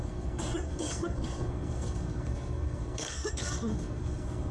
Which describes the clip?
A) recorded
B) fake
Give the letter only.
B